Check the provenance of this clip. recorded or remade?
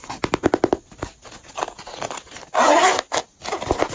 recorded